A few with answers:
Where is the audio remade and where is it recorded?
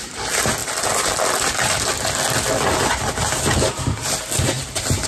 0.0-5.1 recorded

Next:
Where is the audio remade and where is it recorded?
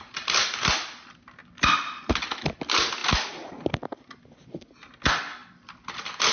0.0-6.3 recorded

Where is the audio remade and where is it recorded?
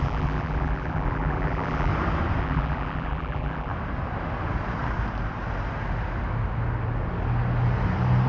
0.0-1.9 remade; 1.9-2.4 recorded; 2.4-3.7 remade; 3.7-8.3 recorded